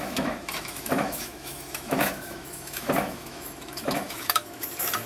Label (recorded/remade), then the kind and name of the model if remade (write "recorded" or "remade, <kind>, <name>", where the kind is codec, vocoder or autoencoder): remade, autoencoder, DAC-VAE